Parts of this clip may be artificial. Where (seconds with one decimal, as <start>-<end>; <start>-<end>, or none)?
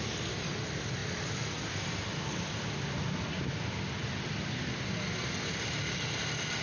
none